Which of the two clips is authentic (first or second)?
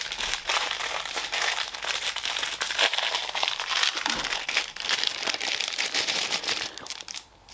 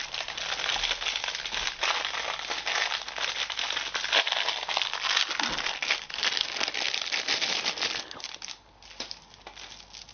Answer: second